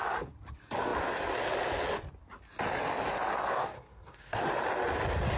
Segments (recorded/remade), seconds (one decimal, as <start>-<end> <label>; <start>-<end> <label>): 0.0-3.5 recorded; 3.5-4.5 remade; 4.5-5.4 recorded